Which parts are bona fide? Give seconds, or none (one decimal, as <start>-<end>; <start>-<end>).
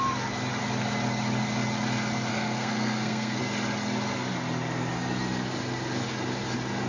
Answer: 0.0-2.3; 3.4-6.9